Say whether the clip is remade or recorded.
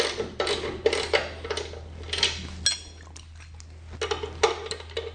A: recorded